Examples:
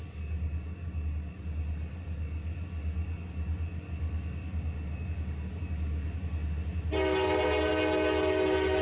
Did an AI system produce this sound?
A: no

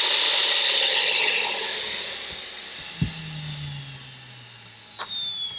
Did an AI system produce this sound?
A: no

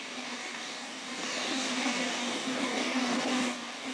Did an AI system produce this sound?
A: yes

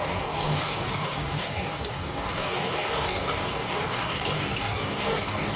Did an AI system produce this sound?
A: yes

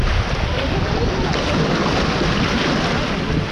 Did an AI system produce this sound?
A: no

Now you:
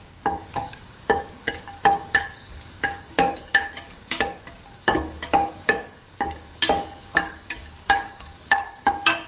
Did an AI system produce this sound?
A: yes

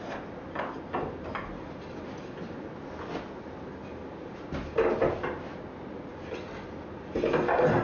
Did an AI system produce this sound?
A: no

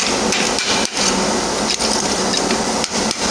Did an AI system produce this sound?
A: no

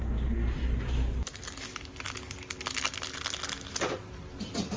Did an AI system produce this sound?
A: no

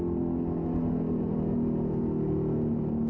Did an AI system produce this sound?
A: no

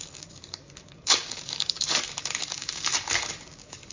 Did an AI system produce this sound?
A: yes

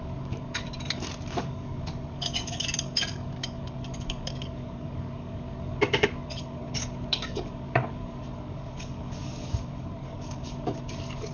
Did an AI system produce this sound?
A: yes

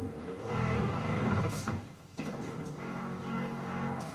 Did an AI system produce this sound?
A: yes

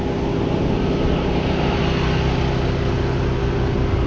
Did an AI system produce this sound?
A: no